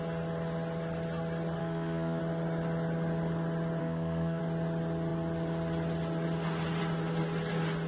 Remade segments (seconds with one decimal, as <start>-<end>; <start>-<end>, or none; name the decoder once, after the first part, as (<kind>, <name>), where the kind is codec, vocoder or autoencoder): 1.6-2.2 (codec, SNAC); 3.8-4.4